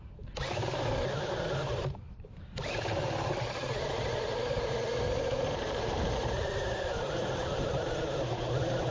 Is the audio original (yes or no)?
no